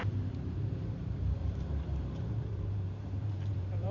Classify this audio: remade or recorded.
remade